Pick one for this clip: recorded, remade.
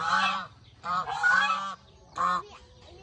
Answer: remade